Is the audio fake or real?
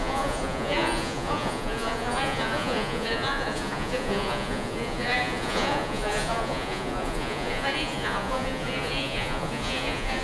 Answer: fake